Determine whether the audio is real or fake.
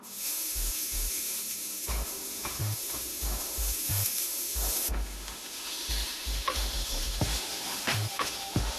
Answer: fake